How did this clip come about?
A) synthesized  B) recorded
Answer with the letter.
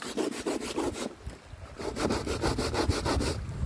B